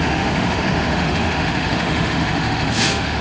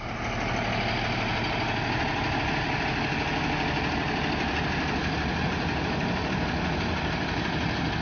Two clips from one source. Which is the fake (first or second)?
first